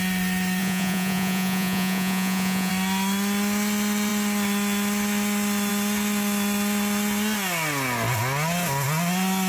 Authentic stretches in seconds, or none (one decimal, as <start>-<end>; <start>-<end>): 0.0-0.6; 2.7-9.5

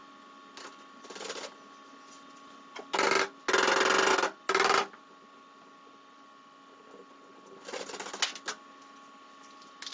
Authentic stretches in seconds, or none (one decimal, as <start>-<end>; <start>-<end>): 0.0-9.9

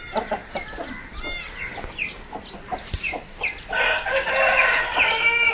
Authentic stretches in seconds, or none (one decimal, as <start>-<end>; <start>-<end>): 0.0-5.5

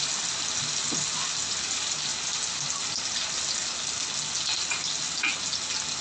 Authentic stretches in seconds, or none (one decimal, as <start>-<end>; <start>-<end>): 0.0-6.0

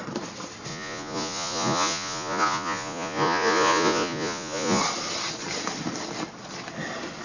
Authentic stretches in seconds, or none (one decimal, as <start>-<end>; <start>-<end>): 0.0-0.7; 4.8-7.2